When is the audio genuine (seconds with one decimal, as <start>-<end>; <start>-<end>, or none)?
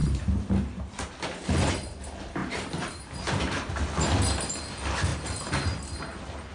0.0-2.4; 3.7-5.1; 5.8-6.5